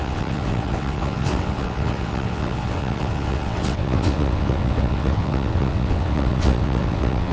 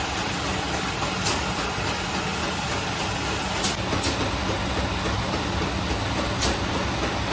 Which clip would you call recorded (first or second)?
second